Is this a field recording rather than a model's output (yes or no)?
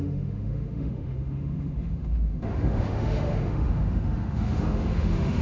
no